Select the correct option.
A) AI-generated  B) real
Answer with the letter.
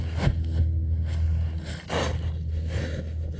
B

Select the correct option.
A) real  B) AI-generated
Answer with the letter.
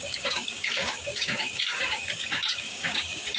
B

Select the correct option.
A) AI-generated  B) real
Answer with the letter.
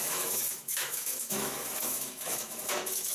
A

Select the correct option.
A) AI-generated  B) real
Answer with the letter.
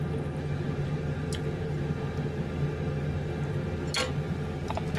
B